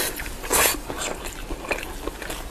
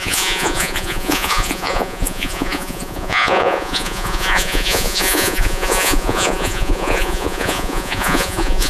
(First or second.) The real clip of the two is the first